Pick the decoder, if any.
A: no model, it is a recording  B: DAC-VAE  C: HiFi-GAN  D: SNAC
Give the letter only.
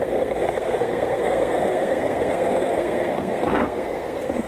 D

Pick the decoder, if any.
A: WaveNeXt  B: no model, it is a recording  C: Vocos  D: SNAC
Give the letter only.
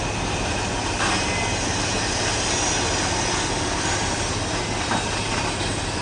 B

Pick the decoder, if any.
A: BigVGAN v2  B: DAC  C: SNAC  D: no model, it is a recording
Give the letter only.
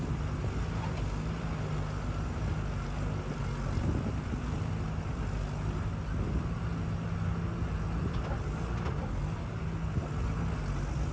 D